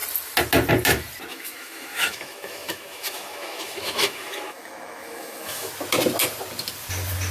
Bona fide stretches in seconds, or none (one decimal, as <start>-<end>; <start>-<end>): 0.0-1.3; 5.7-7.3